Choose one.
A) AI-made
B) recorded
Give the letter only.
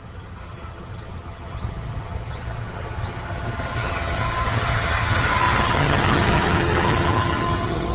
A